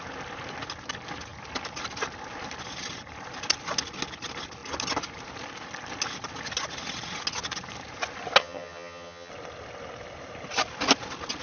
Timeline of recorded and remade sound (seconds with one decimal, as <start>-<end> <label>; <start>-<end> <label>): 0.0-8.4 recorded; 8.4-9.3 remade; 9.3-11.4 recorded